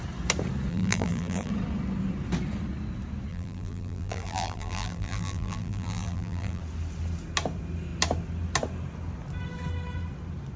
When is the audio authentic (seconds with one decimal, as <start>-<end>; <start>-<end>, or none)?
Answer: 0.0-0.7; 1.5-3.3; 6.6-10.6